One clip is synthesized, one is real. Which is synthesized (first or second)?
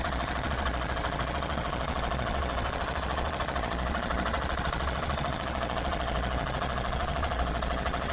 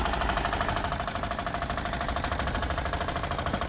first